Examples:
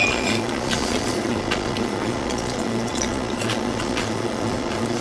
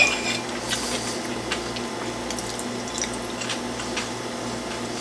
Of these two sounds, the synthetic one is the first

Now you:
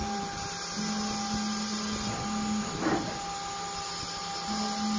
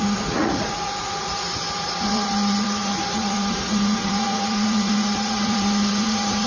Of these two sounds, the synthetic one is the second